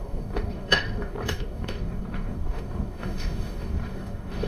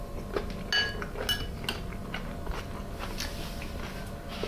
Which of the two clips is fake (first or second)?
first